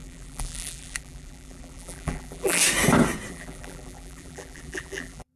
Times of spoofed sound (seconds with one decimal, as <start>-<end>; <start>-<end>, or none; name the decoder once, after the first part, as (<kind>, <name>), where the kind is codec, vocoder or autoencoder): 0.0-2.6 (vocoder, BigVGAN v2); 3.3-5.4